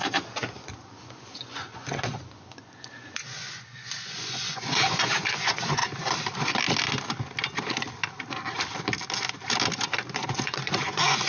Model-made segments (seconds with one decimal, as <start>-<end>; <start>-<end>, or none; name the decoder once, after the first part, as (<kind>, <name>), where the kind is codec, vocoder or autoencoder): 0.0-5.8 (vocoder, Vocos); 10.3-11.3